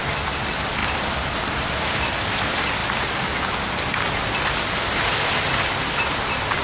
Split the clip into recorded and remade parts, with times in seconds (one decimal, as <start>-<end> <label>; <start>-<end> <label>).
0.0-2.8 remade; 2.8-5.5 recorded; 5.5-6.6 remade